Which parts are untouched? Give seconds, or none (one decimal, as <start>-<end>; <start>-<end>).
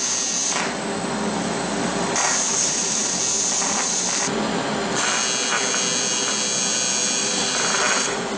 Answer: 0.0-2.5; 3.2-7.2